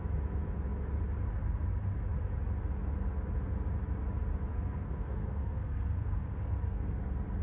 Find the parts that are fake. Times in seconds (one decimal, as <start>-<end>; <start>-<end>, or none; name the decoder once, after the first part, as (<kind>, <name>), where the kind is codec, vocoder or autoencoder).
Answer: 4.5-7.0 (codec, SNAC)